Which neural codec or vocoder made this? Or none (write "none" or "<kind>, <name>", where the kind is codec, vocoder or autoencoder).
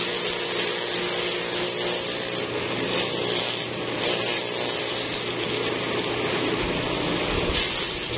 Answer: none